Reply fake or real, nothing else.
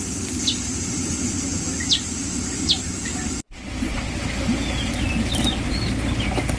real